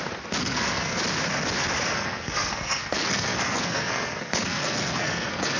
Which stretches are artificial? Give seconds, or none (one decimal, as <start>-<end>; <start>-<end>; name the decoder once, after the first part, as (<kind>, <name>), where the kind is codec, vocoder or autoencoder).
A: 0.4-1.0 (codec, SNAC); 1.9-5.6